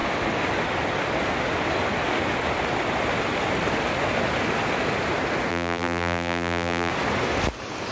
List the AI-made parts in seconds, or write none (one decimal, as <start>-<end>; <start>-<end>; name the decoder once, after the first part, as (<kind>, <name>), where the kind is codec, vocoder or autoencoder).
5.5-6.9 (vocoder, BigVGAN v2)

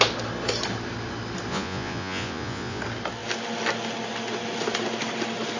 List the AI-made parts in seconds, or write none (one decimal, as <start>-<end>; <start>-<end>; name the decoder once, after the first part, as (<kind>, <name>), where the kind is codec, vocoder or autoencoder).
1.5-2.8 (vocoder, Vocos)

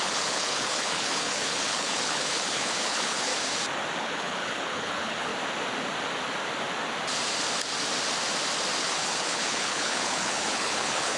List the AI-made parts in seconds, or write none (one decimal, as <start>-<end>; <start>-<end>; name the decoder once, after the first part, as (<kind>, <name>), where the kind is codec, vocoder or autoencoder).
0.0-3.3 (codec, HILCodec); 4.0-5.3; 8.8-11.2

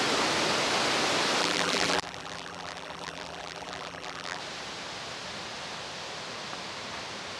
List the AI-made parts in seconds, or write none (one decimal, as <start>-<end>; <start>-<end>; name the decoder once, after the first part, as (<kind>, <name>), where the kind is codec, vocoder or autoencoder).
1.4-4.4 (vocoder, BigVGAN v2)